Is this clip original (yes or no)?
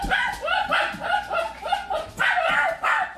yes